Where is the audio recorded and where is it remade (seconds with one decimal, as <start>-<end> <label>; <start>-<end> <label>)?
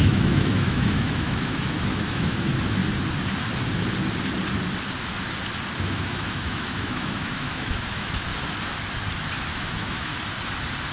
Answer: 0.0-2.8 remade; 2.8-5.8 recorded; 5.8-8.3 remade; 8.3-9.5 recorded; 9.5-10.1 remade; 10.1-10.9 recorded